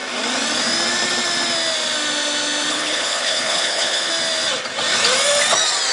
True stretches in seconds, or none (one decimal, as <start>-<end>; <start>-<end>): 0.0-2.7; 4.1-5.9